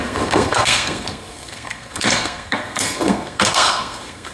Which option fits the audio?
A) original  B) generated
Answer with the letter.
B